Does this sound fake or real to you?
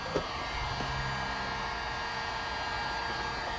real